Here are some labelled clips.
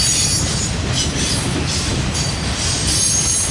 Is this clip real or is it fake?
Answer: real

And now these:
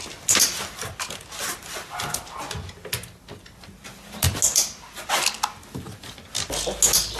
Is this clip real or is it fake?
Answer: real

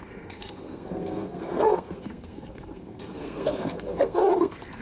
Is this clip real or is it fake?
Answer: fake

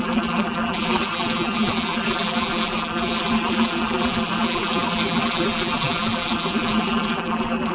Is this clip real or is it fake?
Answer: fake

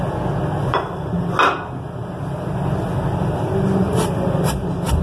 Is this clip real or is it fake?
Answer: real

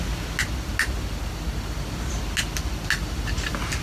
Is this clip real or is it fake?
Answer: real